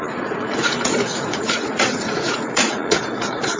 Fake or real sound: fake